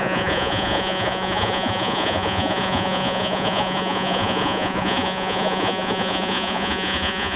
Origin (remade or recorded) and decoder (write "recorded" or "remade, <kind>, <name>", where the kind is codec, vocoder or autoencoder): remade, vocoder, Vocos